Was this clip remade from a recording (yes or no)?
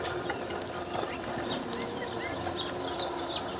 no